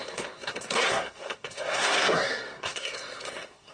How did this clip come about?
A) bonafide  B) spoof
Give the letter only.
B